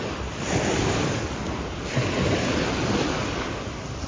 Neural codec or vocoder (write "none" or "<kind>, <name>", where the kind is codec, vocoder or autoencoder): none